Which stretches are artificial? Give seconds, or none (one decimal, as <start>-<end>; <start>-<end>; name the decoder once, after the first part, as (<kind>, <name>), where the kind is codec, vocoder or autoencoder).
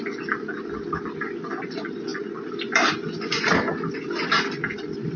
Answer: none